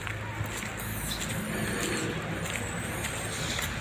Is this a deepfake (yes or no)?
no